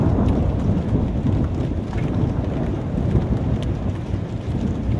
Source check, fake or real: real